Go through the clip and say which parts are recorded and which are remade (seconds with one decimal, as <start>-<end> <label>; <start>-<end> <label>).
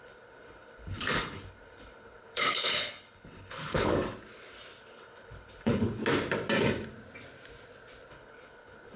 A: 0.0-3.9 remade; 3.9-4.8 recorded; 4.8-6.0 remade; 6.0-8.1 recorded; 8.1-9.0 remade